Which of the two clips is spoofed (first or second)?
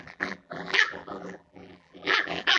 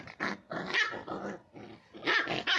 first